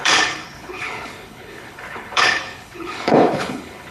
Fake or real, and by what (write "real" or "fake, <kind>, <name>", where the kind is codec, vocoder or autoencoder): fake, codec, HILCodec